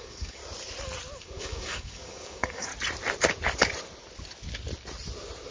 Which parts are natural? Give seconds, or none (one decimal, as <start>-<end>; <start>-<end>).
0.4-1.2; 2.7-5.5